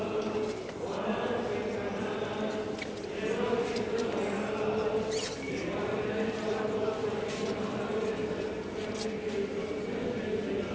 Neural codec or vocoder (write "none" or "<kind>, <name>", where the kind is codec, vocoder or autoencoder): none